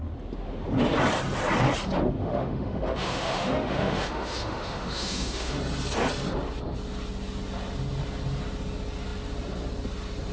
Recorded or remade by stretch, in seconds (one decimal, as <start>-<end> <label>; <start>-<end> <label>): 0.0-2.2 recorded; 2.2-5.6 remade; 5.6-10.3 recorded